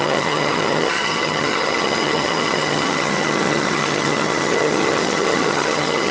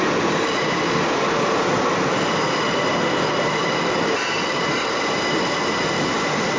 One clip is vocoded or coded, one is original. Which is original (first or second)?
second